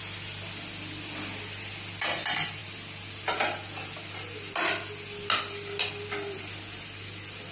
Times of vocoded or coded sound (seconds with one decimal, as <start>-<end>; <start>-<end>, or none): none